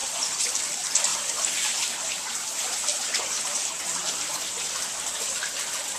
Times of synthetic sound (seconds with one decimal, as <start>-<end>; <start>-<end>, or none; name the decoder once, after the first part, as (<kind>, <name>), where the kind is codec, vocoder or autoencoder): 0.0-0.5 (vocoder, BigVGAN v2); 1.1-4.7